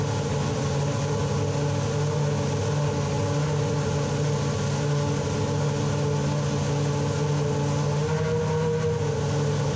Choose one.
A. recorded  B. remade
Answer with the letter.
A